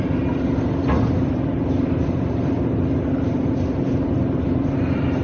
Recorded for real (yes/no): yes